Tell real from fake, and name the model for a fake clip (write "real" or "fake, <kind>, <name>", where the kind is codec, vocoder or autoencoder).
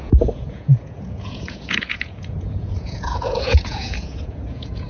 fake, vocoder, Vocos